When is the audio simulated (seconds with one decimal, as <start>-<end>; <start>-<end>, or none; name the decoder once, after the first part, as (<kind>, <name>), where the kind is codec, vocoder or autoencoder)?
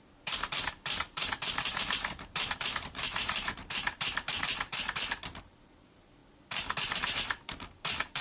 0.0-6.2 (vocoder, BigVGAN v2); 7.0-8.2